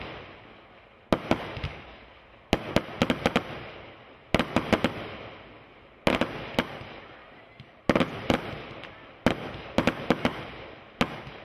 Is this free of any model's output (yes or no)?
yes